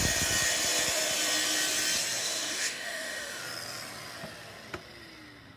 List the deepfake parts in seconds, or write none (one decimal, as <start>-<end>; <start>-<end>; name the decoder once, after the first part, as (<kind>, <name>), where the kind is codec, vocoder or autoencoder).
2.2-3.4 (autoencoder, DAC-VAE)